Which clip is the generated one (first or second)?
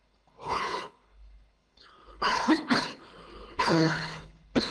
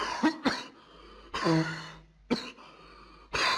first